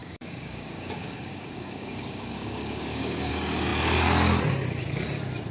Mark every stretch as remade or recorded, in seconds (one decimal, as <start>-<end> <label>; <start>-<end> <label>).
0.0-3.3 remade; 3.3-5.5 recorded